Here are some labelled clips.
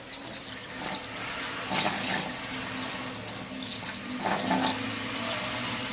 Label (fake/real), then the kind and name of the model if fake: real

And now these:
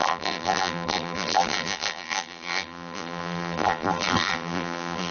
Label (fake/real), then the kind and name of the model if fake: fake, vocoder, BigVGAN v2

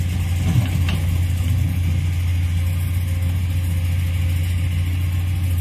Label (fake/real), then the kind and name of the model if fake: real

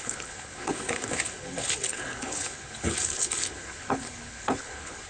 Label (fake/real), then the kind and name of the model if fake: fake, codec, HILCodec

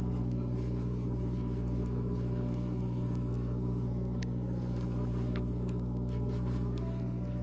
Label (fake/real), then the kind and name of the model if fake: fake, codec, SNAC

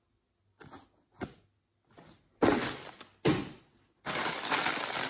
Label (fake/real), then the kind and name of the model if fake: real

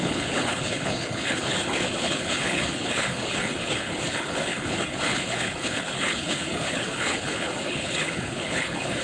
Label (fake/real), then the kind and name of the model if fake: fake, codec, HILCodec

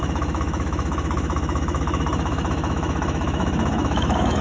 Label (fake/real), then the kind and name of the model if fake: fake, autoencoder, DAC-VAE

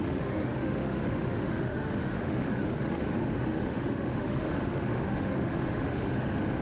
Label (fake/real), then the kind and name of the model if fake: fake, autoencoder, DAC-VAE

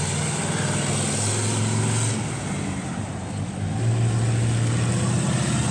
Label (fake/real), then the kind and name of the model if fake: real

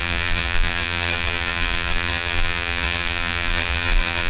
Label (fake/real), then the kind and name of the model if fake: fake, vocoder, BigVGAN v2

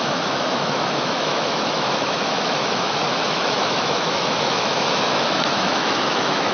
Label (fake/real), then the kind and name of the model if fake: fake, autoencoder, DAC-VAE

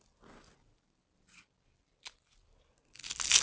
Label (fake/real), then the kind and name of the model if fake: real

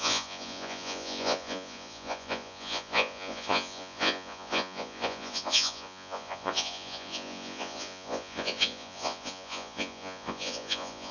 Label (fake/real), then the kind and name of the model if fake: fake, vocoder, Vocos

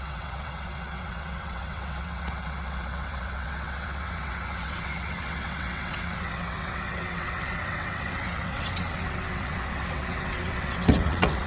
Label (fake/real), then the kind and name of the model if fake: fake, vocoder, WaveNeXt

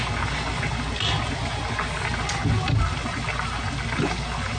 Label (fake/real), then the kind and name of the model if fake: real